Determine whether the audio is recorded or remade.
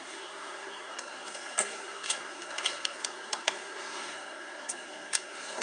remade